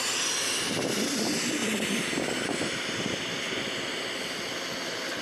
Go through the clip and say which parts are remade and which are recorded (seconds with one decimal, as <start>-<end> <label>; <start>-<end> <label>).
0.0-5.2 recorded